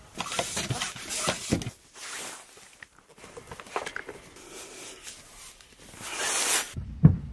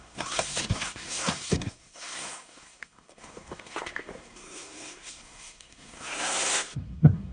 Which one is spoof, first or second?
second